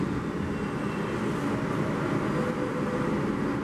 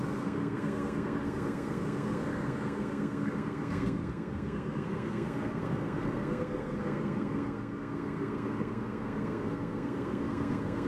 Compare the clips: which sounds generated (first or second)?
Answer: second